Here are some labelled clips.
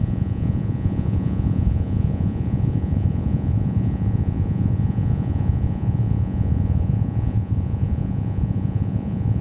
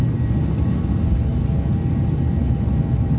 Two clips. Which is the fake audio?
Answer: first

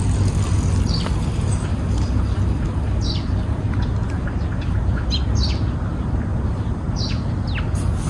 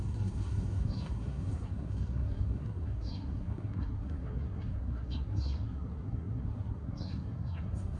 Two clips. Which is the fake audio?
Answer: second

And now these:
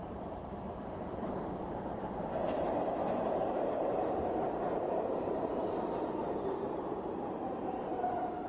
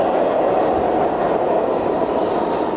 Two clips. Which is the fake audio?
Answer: first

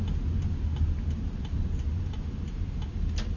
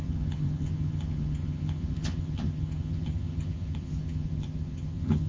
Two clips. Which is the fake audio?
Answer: second